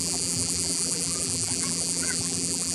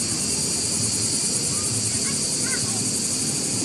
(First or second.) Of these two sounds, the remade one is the first